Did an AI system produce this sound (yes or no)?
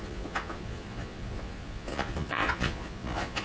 yes